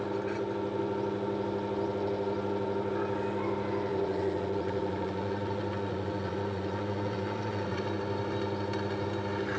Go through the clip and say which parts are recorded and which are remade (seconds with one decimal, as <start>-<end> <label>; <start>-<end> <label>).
0.0-3.9 recorded; 3.9-7.8 remade; 7.8-9.6 recorded